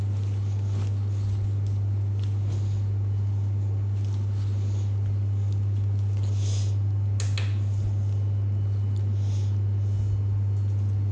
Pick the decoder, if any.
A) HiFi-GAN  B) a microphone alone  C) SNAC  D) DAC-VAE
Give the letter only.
B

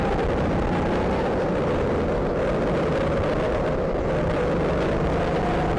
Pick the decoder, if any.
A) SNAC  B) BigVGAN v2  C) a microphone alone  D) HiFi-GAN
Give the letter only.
C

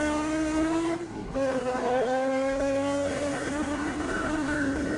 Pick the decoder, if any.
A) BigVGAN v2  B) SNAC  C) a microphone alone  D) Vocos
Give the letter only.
B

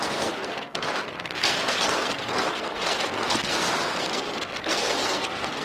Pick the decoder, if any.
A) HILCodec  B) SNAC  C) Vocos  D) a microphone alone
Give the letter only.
B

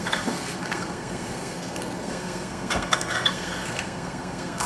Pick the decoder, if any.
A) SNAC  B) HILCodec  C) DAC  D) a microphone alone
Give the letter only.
A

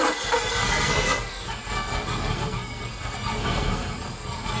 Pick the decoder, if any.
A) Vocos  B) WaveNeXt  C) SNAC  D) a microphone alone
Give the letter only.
C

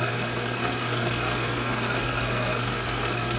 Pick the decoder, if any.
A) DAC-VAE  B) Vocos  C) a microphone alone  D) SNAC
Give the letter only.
D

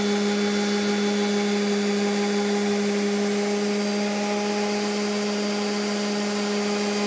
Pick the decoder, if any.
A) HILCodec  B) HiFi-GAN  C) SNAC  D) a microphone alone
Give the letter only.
D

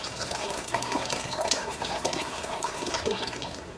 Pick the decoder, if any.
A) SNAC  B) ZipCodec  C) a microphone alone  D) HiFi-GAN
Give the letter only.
A